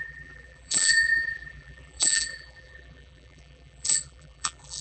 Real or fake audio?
fake